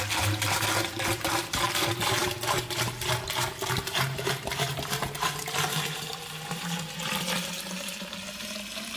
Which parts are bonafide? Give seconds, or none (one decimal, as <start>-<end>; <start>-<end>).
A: none